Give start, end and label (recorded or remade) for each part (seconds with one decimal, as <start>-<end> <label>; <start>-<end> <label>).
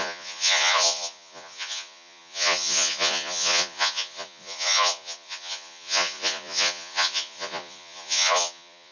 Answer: 0.0-8.9 remade